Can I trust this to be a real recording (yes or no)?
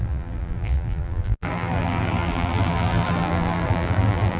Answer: no